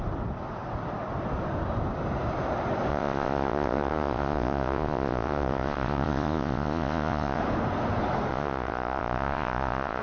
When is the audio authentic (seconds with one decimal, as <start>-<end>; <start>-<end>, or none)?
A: 0.0-2.9; 7.4-8.3

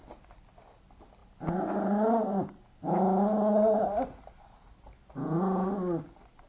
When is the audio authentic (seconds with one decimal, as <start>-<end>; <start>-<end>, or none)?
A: 0.0-6.5

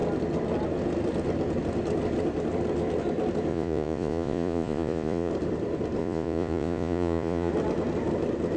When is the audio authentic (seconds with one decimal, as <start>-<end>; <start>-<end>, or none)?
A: 0.0-3.5; 5.3-6.0; 7.5-8.6